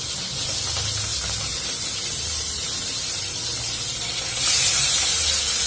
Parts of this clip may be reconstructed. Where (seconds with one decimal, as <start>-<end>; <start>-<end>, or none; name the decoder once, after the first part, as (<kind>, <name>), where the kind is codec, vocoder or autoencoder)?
none